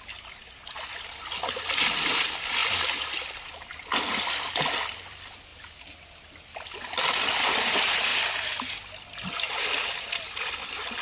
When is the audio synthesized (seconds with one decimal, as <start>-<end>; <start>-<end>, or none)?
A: 5.5-7.7